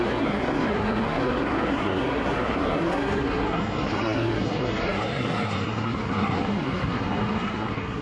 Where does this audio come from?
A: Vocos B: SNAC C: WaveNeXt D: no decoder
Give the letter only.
B